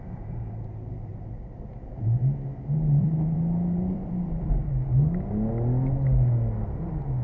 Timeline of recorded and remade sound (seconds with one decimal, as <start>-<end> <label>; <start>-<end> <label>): 0.0-1.1 recorded; 1.1-1.7 remade; 1.7-3.0 recorded; 3.0-4.7 remade; 4.7-7.2 recorded

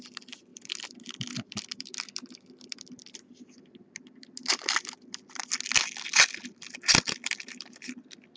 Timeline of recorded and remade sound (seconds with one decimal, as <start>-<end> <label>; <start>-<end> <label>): 0.0-8.4 recorded

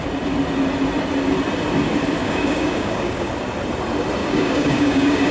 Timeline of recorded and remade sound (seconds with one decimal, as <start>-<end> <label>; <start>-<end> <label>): 0.0-2.2 recorded; 2.2-3.3 remade; 3.3-4.2 recorded; 4.2-5.3 remade

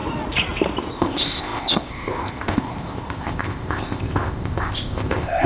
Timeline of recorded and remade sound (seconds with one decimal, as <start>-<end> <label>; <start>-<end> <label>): 0.0-0.9 recorded; 0.9-5.5 remade